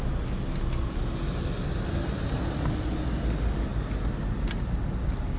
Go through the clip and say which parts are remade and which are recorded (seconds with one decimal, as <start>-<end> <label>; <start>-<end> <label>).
0.0-5.4 recorded